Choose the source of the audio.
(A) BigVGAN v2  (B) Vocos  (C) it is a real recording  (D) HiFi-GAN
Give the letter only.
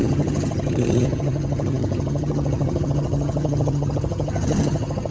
D